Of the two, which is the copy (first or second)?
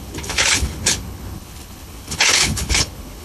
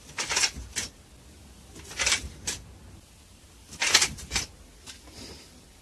first